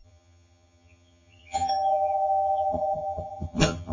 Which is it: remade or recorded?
remade